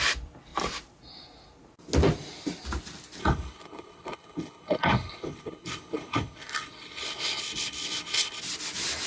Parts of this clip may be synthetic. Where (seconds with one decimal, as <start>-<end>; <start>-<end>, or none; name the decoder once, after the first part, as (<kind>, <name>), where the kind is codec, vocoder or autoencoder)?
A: 3.2-8.4 (codec, HILCodec)